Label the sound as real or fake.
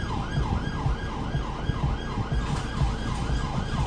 real